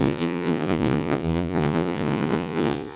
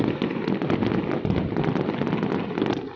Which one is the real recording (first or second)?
second